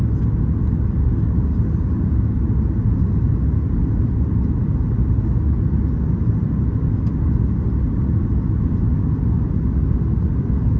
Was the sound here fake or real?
real